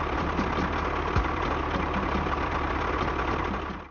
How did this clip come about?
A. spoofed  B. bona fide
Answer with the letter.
B